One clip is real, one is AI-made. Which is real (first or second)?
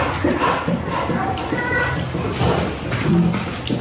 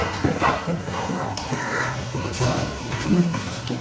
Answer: first